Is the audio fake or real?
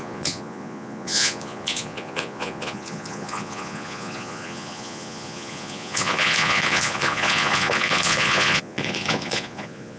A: fake